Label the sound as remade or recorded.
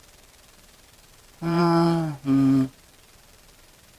remade